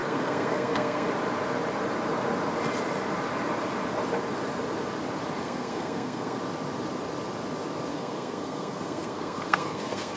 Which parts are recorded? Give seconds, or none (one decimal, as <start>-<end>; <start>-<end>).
1.1-5.4; 6.4-7.9